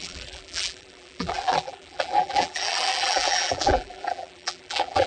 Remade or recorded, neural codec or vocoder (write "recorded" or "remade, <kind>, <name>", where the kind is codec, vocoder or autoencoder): remade, vocoder, BigVGAN v2